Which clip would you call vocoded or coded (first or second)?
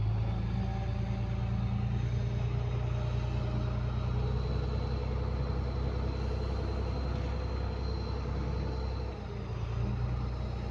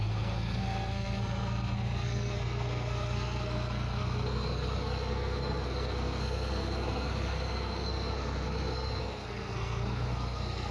second